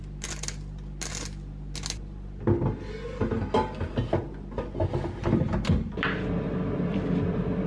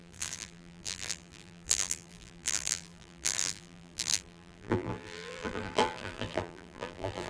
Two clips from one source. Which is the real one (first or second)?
first